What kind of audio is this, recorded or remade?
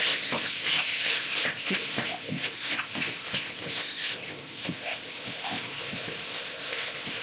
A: remade